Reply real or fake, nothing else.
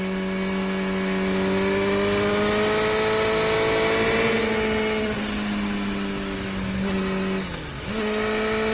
real